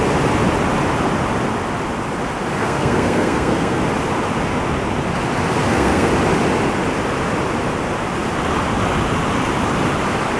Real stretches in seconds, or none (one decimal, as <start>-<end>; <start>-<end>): 0.0-2.6; 3.8-5.6; 6.1-10.4